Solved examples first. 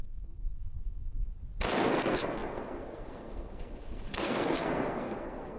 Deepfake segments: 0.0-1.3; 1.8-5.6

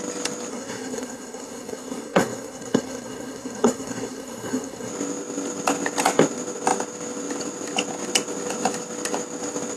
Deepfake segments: 0.5-4.9

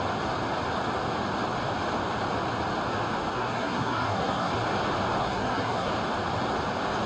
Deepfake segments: 3.3-4.5; 5.2-5.9

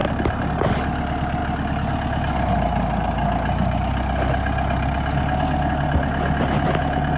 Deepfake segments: none